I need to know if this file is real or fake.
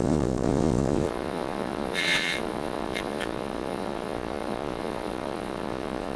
fake